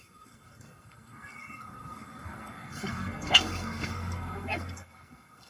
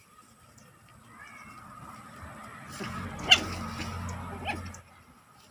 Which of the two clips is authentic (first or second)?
second